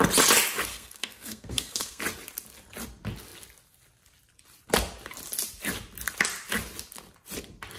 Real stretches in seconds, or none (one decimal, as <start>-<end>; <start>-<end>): 0.0-0.7; 2.0-7.8